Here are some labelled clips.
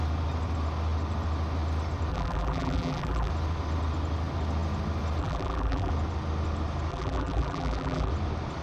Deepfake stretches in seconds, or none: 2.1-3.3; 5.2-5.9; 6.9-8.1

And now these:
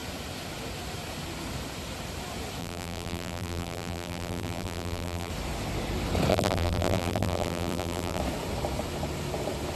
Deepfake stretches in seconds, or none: 2.6-5.3; 6.3-8.2

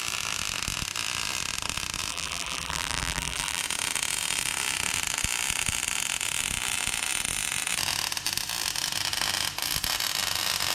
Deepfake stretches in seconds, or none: 2.1-3.6

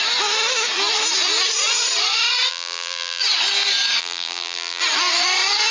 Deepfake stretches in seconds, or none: 2.5-3.2; 4.0-4.8